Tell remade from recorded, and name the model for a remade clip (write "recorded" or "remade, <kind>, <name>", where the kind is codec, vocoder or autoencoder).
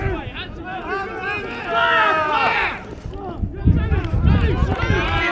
recorded